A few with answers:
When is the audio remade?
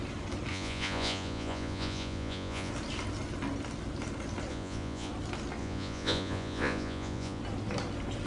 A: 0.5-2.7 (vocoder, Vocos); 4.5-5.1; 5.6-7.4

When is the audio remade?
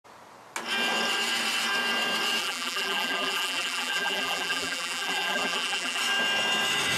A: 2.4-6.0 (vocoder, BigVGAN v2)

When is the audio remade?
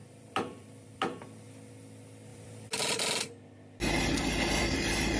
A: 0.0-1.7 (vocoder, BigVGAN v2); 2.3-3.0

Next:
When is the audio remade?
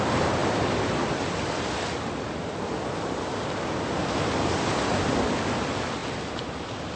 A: none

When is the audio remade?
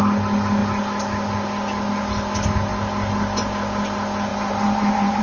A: 4.3-5.2 (vocoder, BigVGAN v2)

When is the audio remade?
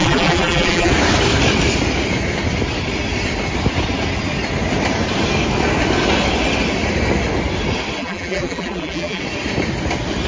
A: 0.0-0.9 (vocoder, BigVGAN v2); 8.0-9.2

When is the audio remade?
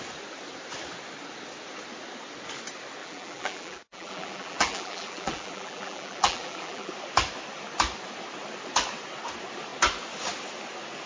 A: 3.0-6.9 (vocoder, BigVGAN v2)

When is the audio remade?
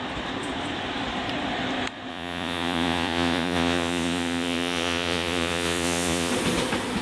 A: 2.1-6.3 (vocoder, Vocos)